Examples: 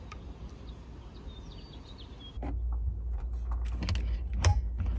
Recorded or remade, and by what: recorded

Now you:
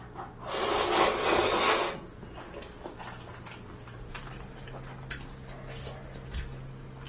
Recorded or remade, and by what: recorded